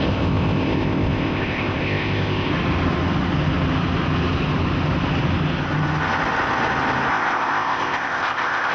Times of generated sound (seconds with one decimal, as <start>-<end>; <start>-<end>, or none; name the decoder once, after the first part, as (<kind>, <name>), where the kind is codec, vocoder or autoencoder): 0.0-2.5 (codec, ZipCodec); 7.1-8.7